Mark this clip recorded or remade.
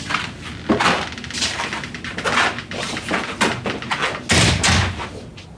recorded